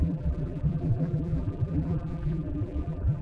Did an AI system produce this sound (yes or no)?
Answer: yes